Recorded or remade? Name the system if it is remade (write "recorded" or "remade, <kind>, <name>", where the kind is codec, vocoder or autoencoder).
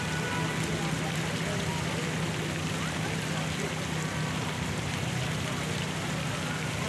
recorded